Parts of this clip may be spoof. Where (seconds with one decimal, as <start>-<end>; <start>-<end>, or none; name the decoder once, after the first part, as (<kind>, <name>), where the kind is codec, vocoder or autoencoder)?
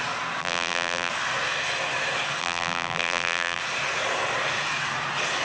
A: 0.4-1.1 (vocoder, BigVGAN v2); 2.4-3.6